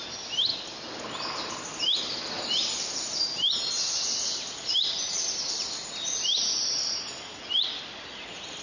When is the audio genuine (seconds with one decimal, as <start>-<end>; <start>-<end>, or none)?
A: 0.0-8.6